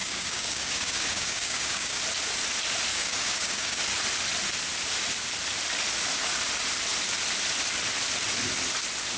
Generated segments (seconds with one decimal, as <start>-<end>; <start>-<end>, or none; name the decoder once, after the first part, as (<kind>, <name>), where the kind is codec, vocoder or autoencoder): 0.0-2.0 (codec, DAC); 2.9-3.8